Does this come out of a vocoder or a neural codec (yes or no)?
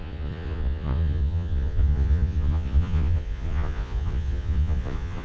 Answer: yes